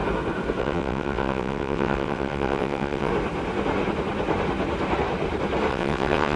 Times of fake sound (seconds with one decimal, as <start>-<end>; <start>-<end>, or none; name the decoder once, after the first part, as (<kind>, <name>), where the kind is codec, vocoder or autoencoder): 0.6-3.1 (vocoder, WaveNeXt); 5.7-6.4